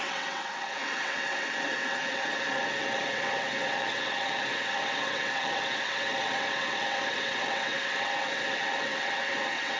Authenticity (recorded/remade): remade